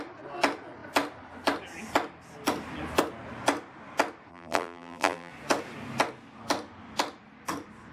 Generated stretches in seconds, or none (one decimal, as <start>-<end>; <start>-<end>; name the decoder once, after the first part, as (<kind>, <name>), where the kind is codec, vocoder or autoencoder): 4.3-5.3 (vocoder, BigVGAN v2)